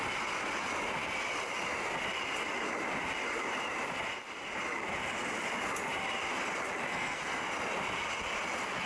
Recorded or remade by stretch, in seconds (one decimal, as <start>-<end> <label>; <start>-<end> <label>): 0.0-6.9 recorded; 6.9-7.4 remade; 7.4-8.9 recorded